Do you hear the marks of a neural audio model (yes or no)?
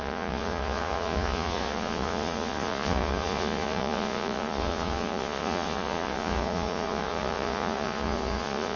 yes